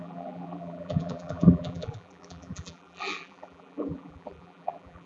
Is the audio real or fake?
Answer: fake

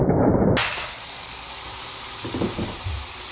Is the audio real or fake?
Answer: real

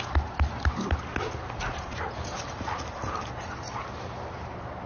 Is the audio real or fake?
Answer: real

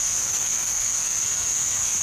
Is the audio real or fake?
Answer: fake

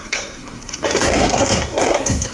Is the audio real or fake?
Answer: fake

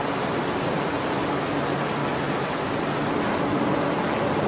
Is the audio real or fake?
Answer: real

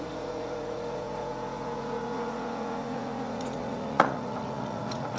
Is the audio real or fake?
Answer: fake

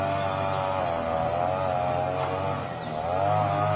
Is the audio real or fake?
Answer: real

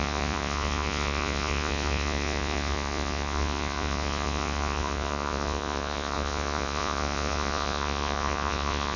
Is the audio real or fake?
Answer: fake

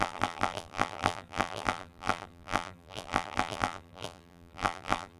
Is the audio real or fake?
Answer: fake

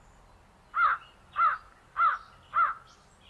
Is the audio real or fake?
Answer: real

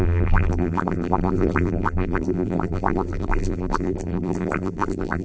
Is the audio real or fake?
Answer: fake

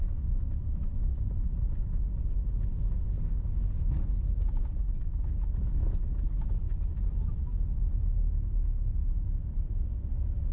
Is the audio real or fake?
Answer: real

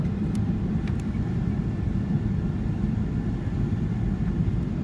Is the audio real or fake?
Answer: real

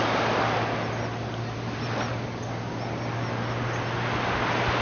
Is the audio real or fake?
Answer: real